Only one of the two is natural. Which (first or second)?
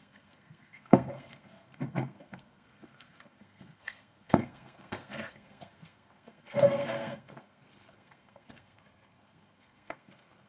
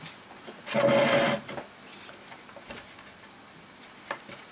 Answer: second